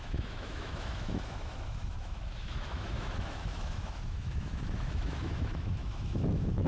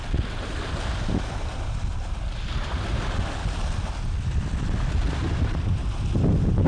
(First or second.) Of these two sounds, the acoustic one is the second